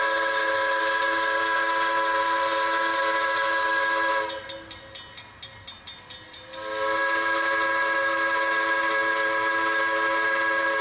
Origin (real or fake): real